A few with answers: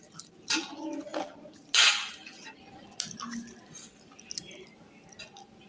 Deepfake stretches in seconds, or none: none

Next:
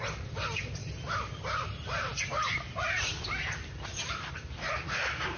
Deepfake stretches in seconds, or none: none

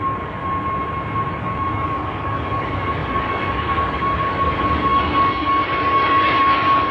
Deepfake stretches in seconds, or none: 0.0-0.4; 1.3-6.9

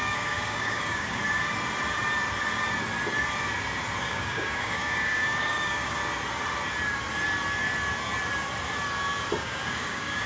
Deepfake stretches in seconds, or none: 0.0-1.2; 4.0-6.0; 9.4-10.3

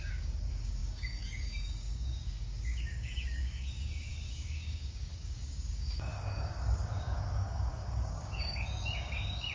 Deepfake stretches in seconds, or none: 0.0-9.5